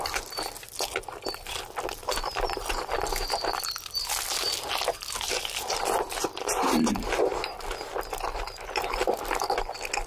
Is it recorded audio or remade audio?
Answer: recorded